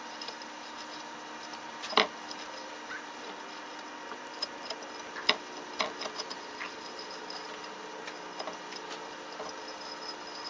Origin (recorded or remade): recorded